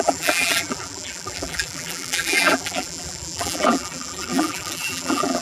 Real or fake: fake